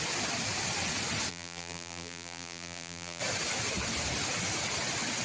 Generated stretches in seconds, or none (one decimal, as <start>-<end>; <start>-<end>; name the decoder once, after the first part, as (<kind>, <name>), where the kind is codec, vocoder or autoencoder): 1.3-3.2 (vocoder, BigVGAN v2)